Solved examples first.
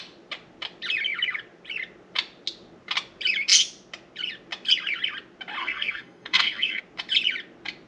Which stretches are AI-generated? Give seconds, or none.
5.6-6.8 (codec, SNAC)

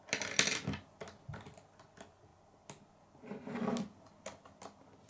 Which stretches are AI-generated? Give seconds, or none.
none

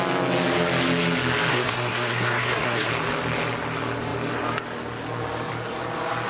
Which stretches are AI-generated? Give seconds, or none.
1.5-2.9 (codec, SNAC)

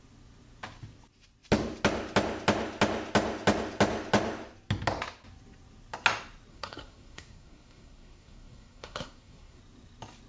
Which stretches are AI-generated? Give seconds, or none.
6.5-9.6 (codec, SNAC)

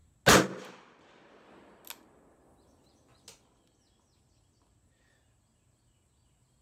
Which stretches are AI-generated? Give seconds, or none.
none

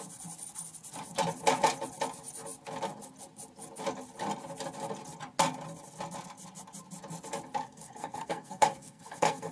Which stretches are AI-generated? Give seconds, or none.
7.6-9.5 (codec, SNAC)

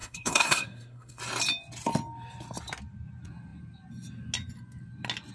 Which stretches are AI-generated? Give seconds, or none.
0.0-1.2 (codec, SNAC)

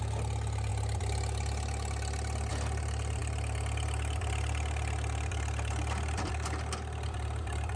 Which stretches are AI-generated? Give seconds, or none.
none